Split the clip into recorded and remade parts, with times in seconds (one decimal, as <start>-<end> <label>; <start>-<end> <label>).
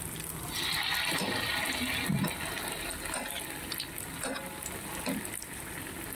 0.0-6.2 recorded